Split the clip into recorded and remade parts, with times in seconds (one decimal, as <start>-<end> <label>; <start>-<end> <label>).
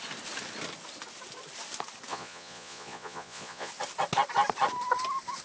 0.0-2.1 recorded; 2.1-3.7 remade; 3.7-5.4 recorded